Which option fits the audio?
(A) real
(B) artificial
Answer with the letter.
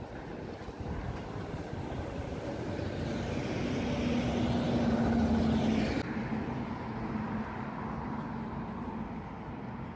A